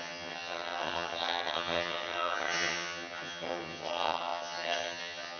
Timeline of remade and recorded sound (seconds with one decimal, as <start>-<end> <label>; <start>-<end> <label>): 0.0-5.4 remade